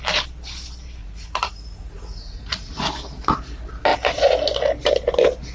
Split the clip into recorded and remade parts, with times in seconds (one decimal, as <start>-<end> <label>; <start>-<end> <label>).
0.0-1.0 recorded; 1.0-2.8 remade; 2.8-5.5 recorded

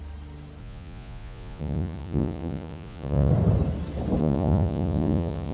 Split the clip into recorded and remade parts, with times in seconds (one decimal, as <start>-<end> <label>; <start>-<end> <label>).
0.0-0.6 recorded; 0.6-3.3 remade; 3.3-4.2 recorded; 4.2-5.5 remade

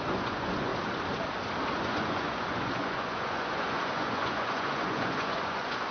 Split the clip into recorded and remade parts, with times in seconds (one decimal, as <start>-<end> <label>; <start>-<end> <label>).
0.0-0.7 remade; 0.7-1.8 recorded; 1.8-5.9 remade

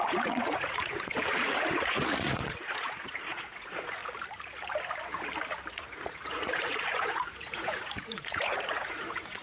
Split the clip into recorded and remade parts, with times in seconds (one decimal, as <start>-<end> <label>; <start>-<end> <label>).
0.0-4.0 remade; 4.0-5.7 recorded; 5.7-9.4 remade

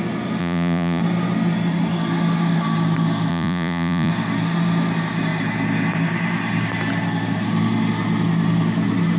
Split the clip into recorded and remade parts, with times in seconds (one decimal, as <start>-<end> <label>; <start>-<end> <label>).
0.0-0.4 recorded; 0.4-1.0 remade; 1.0-3.3 recorded; 3.3-4.1 remade; 4.1-9.2 recorded

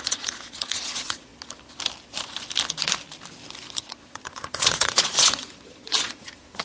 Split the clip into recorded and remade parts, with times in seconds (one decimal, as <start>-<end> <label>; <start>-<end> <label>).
0.0-1.3 remade; 1.3-3.8 recorded; 3.8-6.6 remade

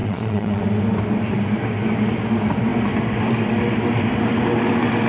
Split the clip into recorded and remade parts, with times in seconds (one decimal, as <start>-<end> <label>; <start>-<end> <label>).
0.0-0.6 remade; 0.6-5.1 recorded